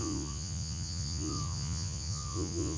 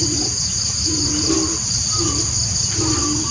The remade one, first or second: first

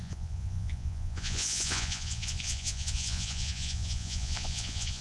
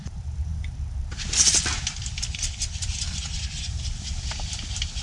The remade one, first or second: first